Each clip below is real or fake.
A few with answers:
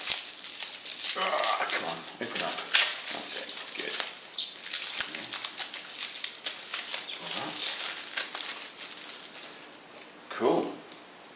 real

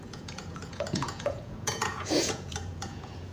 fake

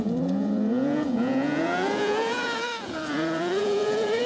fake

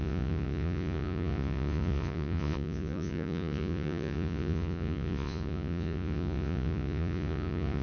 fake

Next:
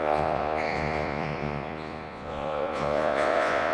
fake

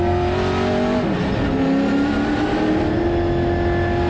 real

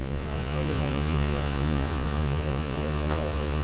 fake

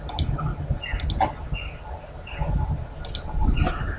real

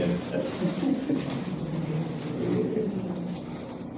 real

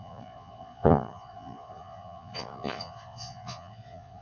fake